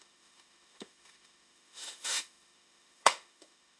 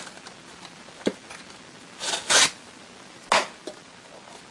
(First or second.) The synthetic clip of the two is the first